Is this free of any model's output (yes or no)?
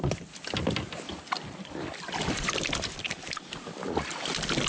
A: yes